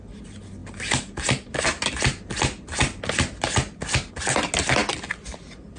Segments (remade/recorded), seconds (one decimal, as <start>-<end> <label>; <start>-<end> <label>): 0.0-5.8 recorded